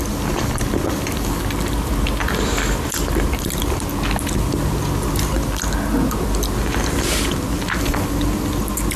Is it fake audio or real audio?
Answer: real